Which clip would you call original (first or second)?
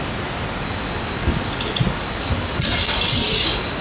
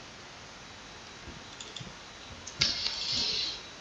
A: second